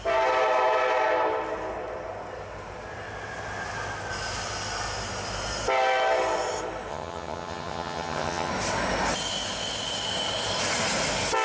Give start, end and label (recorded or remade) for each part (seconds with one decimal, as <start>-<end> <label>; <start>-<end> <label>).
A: 0.0-6.9 recorded; 6.9-8.5 remade; 8.5-11.4 recorded